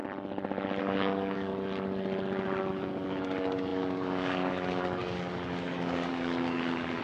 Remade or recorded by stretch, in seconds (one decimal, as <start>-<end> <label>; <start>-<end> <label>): 0.0-0.8 recorded; 0.8-1.5 remade; 1.5-2.7 recorded; 2.7-7.0 remade